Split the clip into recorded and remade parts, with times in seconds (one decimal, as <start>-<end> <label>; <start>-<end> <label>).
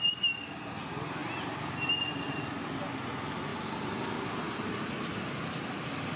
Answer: 0.0-6.2 recorded